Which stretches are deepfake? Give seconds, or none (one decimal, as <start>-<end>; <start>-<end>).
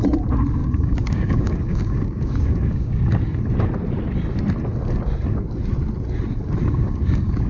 0.6-3.2; 6.6-7.5